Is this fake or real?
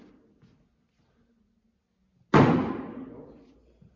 real